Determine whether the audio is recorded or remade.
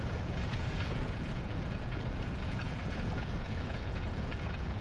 remade